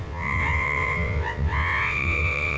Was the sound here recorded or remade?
remade